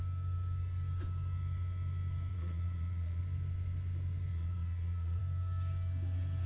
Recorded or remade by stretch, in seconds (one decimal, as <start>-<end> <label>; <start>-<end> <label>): 0.0-2.3 recorded; 2.3-3.2 remade; 3.2-4.3 recorded; 4.3-5.2 remade; 5.2-6.5 recorded